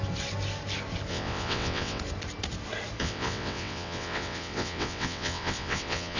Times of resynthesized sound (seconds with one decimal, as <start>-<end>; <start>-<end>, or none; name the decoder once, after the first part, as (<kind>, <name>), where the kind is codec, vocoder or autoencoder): 1.1-2.0 (vocoder, WaveNeXt); 3.0-6.2